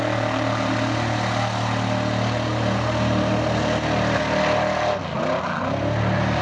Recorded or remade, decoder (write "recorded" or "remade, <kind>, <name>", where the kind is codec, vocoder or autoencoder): recorded